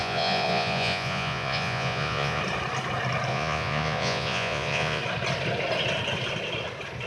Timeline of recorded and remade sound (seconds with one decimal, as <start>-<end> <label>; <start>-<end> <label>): 0.0-2.4 remade; 2.4-3.3 recorded; 3.3-5.0 remade; 5.0-7.1 recorded

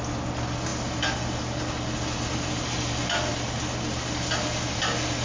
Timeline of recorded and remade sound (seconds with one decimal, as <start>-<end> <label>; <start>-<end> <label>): 0.0-5.2 recorded

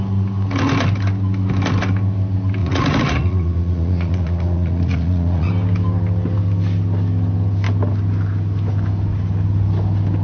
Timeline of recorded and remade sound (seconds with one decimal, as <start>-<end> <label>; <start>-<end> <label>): 0.0-2.6 recorded; 2.6-5.5 remade; 5.5-10.2 recorded

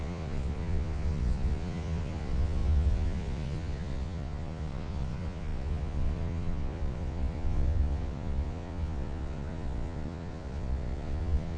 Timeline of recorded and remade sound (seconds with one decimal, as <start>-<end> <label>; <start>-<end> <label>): 0.0-11.6 remade

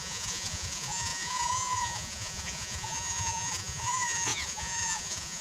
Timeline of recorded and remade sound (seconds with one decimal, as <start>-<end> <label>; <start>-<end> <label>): 0.0-5.4 remade

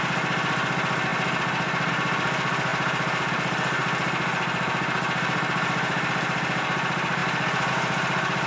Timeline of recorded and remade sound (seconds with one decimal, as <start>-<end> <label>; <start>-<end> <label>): 0.0-8.5 recorded